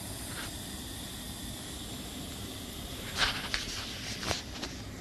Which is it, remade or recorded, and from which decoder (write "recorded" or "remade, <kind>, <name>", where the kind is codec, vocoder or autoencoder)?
recorded